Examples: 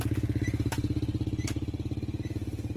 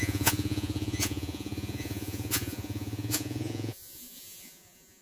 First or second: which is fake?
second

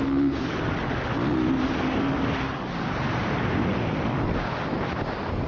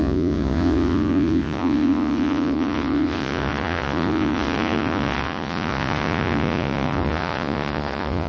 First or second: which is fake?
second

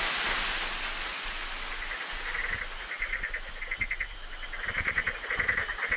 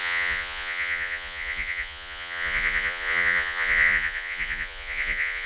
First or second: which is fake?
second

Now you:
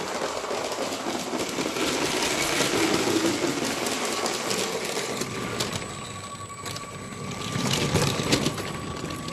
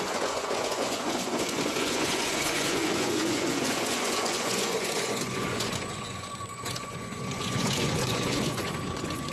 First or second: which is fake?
second